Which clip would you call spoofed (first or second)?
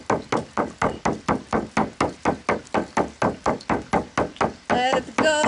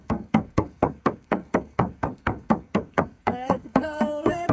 second